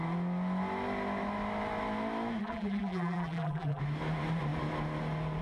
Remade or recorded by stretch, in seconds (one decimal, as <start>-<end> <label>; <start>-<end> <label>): 0.0-2.4 recorded; 2.4-3.8 remade; 3.8-5.4 recorded